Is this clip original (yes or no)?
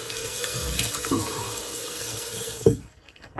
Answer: no